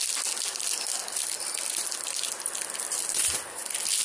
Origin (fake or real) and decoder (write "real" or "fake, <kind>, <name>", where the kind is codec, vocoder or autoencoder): real